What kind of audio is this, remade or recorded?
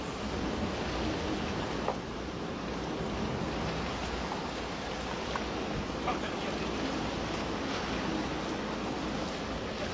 recorded